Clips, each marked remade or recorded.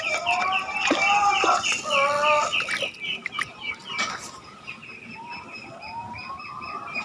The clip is recorded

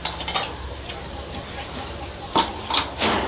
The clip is recorded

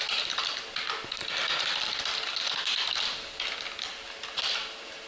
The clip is recorded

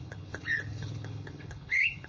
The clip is remade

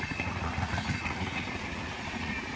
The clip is remade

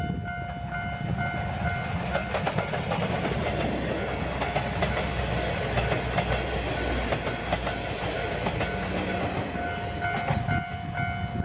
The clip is recorded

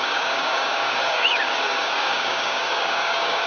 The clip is remade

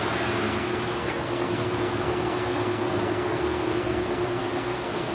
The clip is remade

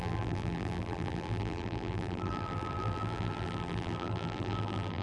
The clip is remade